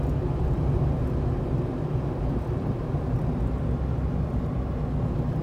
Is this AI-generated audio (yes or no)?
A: no